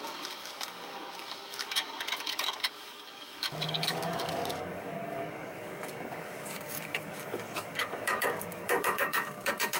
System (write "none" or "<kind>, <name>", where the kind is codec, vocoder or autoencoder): codec, DAC